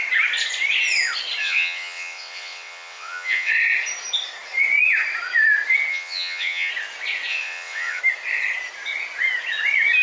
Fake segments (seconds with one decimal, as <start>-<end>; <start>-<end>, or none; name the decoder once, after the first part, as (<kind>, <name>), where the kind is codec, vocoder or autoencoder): 1.4-3.5 (vocoder, WaveNeXt); 5.9-6.7; 7.3-8.0